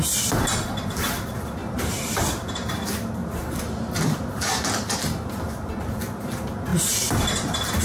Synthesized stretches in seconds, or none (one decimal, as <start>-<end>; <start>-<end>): 1.6-2.2; 3.2-4.5